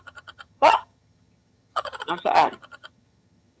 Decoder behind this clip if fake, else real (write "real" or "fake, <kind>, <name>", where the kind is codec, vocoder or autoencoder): fake, vocoder, HiFi-GAN